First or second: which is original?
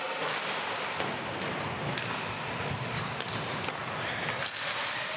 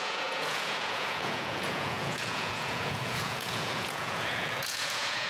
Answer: first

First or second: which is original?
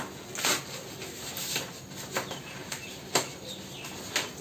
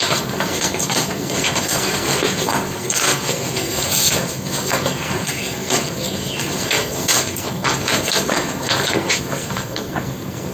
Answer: first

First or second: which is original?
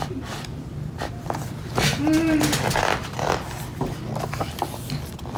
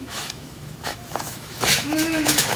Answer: first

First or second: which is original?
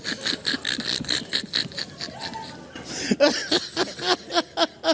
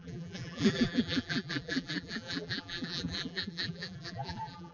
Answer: first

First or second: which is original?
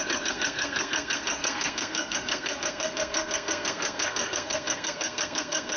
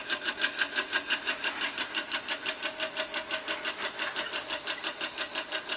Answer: second